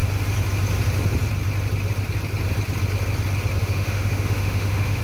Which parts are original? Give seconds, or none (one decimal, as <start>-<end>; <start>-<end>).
0.0-3.6